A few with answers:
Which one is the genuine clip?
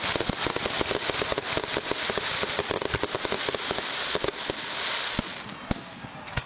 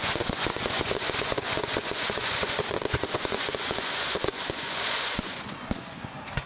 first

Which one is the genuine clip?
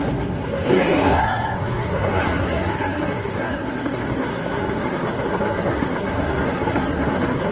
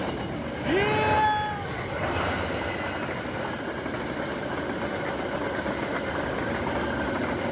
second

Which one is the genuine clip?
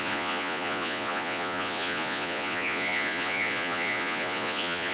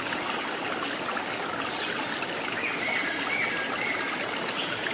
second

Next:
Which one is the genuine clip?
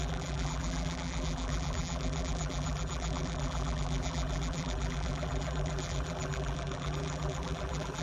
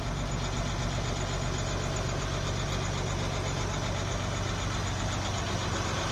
second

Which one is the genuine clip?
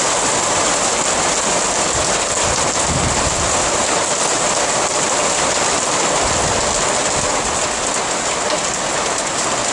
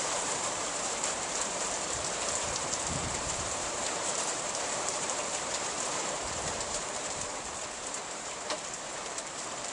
first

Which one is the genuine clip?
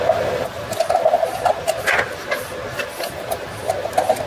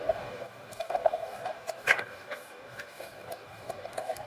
first